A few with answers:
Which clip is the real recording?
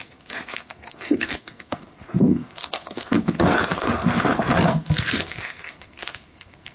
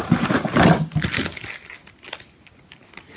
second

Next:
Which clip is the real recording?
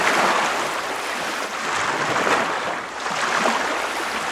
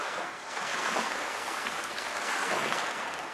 first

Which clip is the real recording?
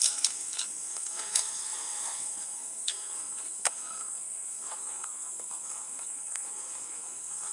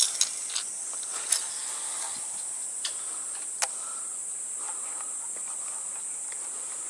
second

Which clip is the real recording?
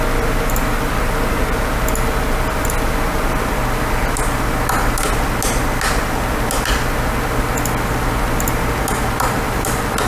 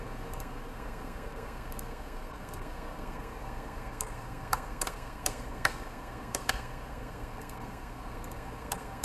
first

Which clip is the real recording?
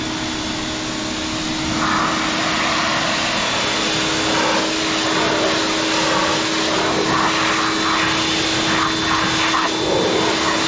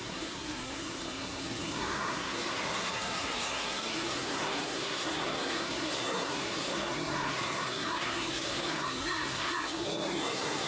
first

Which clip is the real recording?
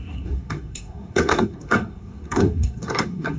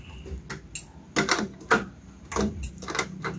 second